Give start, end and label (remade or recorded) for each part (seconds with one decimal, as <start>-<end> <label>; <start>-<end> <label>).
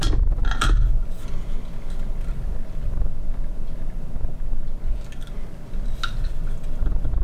0.0-7.2 recorded